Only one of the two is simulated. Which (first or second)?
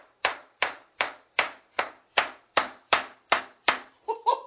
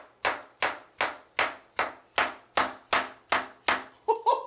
first